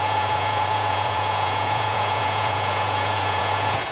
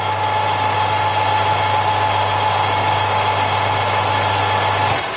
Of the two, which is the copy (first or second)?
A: first